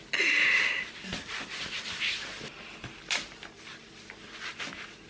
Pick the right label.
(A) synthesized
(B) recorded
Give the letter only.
B